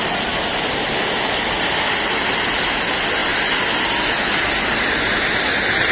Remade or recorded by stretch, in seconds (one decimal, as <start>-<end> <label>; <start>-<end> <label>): 0.0-5.9 recorded